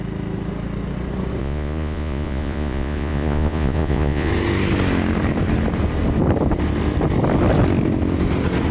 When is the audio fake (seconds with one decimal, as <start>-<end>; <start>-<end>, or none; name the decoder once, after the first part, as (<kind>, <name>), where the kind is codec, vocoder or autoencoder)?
1.4-4.3 (vocoder, Vocos)